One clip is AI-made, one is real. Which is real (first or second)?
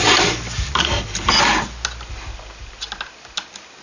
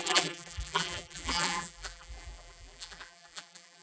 first